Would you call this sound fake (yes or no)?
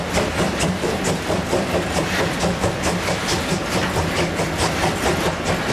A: no